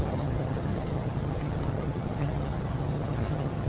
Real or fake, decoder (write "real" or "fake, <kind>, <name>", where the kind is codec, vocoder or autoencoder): fake, vocoder, HiFi-GAN